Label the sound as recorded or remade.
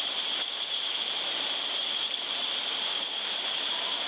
remade